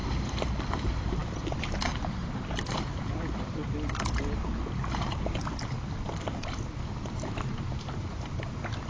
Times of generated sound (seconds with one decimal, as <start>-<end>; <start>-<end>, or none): 0.5-3.6; 7.0-8.9